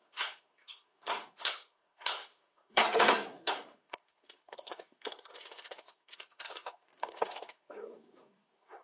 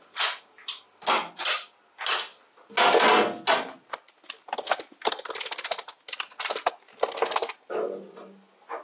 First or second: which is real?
second